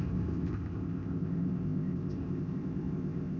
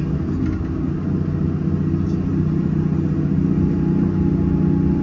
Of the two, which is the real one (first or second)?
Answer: second